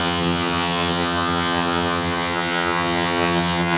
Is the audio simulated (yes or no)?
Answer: yes